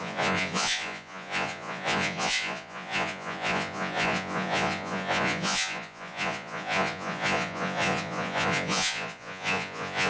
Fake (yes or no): yes